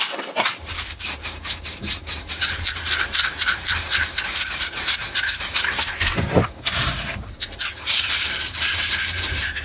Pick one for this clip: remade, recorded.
remade